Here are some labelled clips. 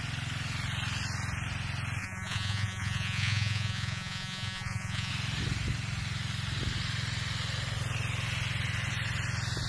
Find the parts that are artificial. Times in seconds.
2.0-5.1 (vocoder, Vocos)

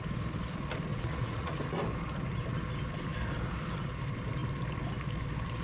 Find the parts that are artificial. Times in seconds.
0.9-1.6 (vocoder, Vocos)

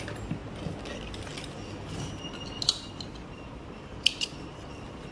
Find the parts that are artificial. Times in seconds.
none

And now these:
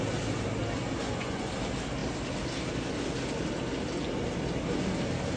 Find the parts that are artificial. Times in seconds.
1.0-1.5 (vocoder, Vocos)

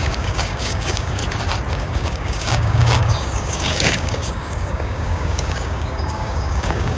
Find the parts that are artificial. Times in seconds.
0.0-1.2 (codec, DAC); 1.7-7.0

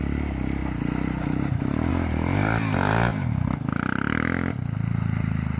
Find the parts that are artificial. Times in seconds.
none

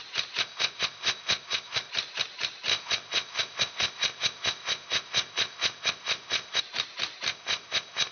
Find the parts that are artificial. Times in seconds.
0.4-1.9 (codec, ZipCodec); 2.7-6.6; 7.3-8.1

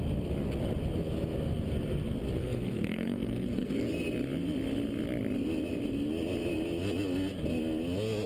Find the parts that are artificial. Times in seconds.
2.4-3.8 (codec, SNAC)